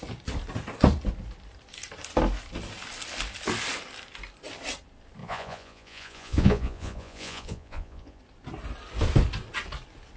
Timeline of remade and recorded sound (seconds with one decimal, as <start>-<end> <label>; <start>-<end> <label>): 0.0-5.2 recorded; 5.2-8.2 remade; 8.2-10.2 recorded